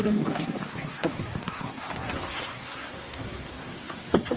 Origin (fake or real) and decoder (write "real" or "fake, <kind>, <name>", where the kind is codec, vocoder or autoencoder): fake, codec, SNAC